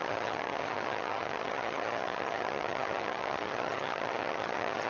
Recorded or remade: remade